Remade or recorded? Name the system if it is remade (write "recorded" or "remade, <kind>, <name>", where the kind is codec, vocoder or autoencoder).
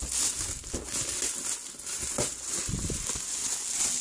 recorded